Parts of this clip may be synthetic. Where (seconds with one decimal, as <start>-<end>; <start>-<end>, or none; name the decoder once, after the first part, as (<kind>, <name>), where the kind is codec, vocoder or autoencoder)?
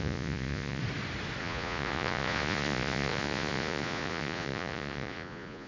0.0-0.8 (vocoder, Vocos); 1.4-5.7